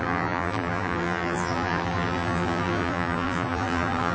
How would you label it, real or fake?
fake